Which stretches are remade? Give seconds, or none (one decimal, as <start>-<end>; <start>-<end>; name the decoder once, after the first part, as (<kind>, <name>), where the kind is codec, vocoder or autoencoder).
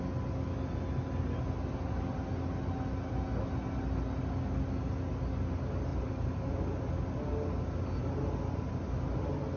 5.9-6.4 (vocoder, BigVGAN v2)